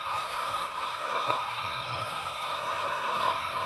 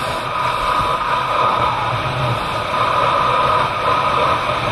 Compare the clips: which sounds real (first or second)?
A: second